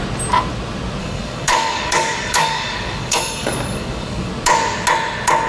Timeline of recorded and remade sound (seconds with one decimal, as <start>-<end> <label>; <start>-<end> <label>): 0.0-1.0 recorded; 1.0-4.3 remade; 4.3-5.5 recorded